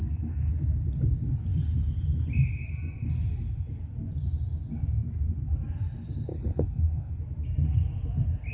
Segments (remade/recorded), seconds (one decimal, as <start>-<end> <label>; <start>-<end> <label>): 0.0-0.5 remade; 0.5-6.3 recorded; 6.3-7.2 remade; 7.2-8.5 recorded

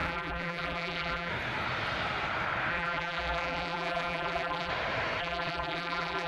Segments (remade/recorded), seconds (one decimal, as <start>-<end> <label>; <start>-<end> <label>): 0.0-1.3 remade; 1.3-2.7 recorded; 2.7-4.7 remade; 4.7-5.2 recorded; 5.2-6.3 remade

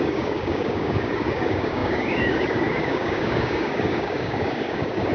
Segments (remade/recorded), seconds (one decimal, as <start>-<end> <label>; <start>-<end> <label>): 0.0-5.1 remade

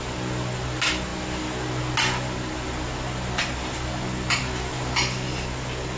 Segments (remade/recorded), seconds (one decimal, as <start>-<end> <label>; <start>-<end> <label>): 0.0-6.0 recorded

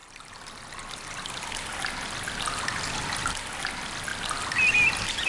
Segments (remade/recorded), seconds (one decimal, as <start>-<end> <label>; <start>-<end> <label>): 0.0-5.3 recorded

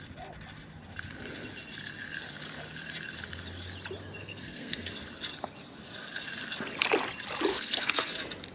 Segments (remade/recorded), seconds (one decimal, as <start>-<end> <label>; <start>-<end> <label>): 0.0-4.2 recorded; 4.2-4.9 remade; 4.9-7.5 recorded; 7.5-8.1 remade; 8.1-8.5 recorded

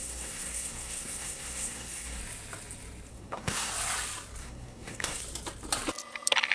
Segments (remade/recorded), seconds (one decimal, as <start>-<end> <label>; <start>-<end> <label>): 0.0-2.2 remade; 2.2-3.1 recorded; 3.1-3.7 remade; 3.7-4.4 recorded; 4.4-5.2 remade; 5.2-6.5 recorded

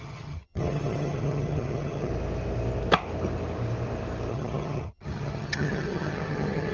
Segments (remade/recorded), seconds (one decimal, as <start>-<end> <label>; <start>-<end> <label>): 0.0-2.1 remade; 2.1-4.3 recorded; 4.3-6.7 remade